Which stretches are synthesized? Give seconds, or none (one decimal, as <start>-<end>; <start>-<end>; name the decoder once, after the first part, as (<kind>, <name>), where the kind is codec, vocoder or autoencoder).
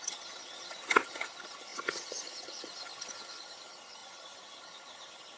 0.0-5.4 (vocoder, HiFi-GAN)